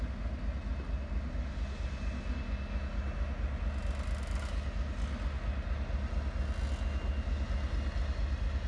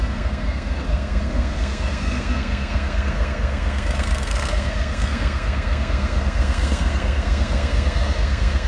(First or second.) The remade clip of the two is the second